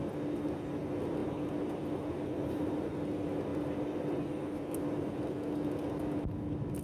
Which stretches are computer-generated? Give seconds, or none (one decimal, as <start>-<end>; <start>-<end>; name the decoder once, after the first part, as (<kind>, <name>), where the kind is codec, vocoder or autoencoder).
none